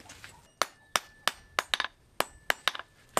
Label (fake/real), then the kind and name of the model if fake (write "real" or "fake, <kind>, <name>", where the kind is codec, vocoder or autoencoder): real